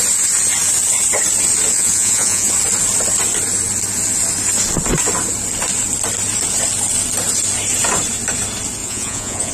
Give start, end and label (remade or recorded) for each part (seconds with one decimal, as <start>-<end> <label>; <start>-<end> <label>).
0.0-1.7 recorded; 1.7-2.5 remade; 2.5-8.8 recorded; 8.8-9.5 remade